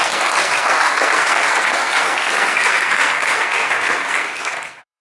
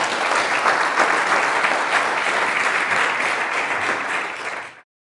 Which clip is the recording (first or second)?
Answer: second